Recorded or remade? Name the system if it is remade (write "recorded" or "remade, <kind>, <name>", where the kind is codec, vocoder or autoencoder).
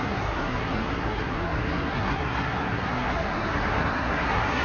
remade, codec, SNAC